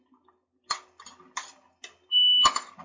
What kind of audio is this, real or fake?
real